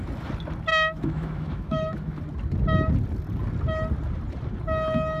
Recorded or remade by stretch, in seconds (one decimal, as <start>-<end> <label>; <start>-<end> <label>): 0.0-0.7 recorded; 0.7-2.2 remade; 2.2-5.2 recorded

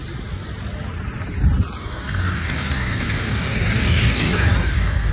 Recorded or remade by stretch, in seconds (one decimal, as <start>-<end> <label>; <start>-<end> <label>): 0.0-1.8 recorded; 1.8-5.1 remade